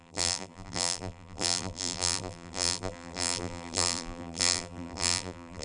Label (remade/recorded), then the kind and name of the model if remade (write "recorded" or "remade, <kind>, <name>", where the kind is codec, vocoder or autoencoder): remade, vocoder, BigVGAN v2